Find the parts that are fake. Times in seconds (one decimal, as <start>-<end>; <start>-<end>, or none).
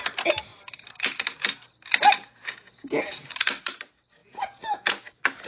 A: 2.4-3.3; 4.2-5.1